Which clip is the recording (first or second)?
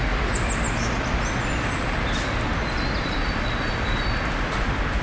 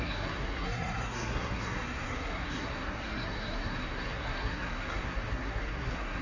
first